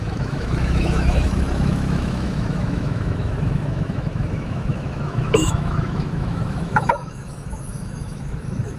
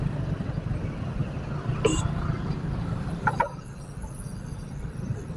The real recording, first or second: second